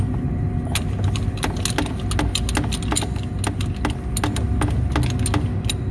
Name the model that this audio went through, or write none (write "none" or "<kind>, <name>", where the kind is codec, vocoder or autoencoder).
none